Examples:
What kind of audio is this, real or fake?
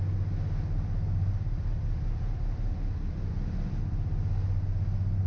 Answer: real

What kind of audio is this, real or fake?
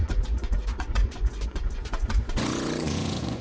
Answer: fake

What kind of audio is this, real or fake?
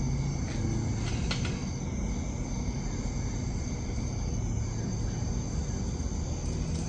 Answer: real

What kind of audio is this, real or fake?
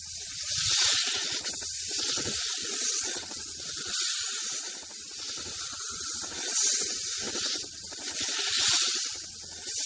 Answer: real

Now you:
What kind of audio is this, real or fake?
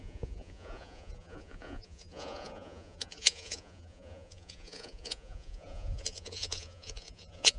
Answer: fake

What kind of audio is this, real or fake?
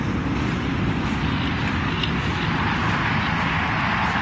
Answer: real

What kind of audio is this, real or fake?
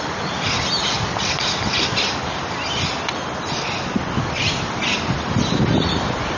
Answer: real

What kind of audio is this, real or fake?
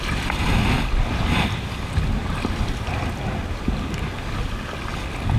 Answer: real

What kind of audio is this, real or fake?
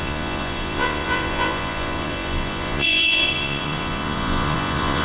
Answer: fake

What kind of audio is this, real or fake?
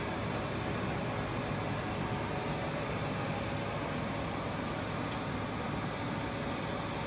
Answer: real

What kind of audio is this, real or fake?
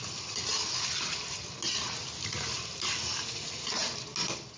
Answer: real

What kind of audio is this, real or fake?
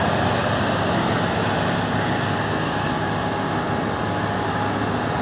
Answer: real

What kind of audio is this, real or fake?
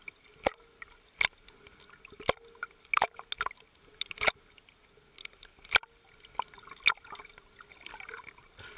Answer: real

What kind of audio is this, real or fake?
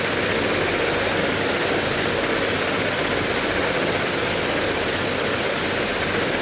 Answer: real